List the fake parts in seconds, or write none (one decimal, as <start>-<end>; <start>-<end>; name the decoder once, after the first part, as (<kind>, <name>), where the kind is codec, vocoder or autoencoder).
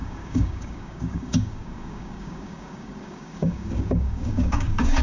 0.0-5.0 (codec, DAC)